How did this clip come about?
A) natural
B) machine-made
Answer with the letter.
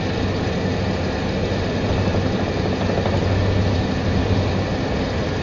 A